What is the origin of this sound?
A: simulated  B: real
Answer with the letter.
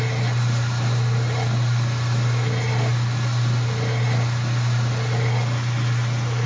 B